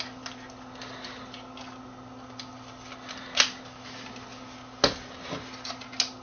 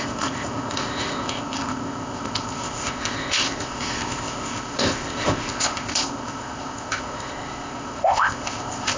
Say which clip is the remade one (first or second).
second